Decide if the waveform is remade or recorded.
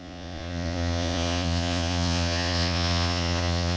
remade